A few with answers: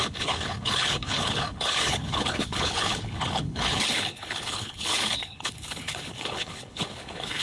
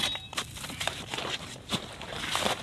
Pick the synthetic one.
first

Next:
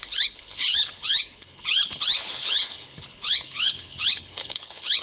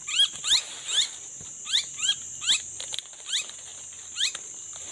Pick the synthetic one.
first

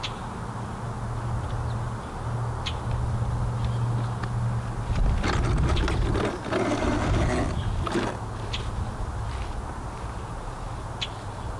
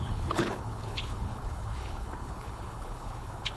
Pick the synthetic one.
second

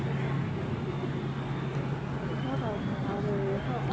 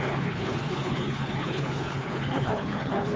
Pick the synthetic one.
second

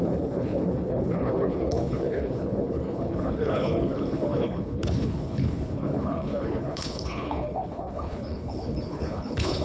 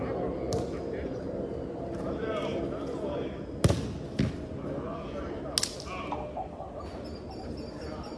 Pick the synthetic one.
first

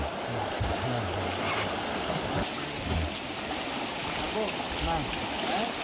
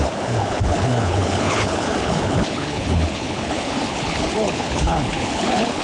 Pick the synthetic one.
second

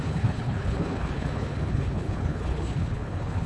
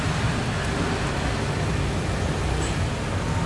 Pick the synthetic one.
first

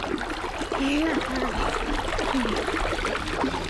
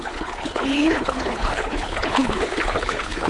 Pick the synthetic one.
second